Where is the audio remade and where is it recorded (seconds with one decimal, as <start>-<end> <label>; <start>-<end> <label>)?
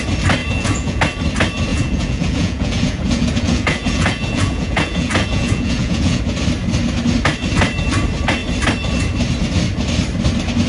0.0-0.4 recorded; 0.4-1.0 remade; 1.0-1.7 recorded; 1.7-6.2 remade; 6.2-10.7 recorded